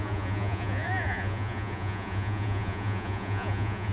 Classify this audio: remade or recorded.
remade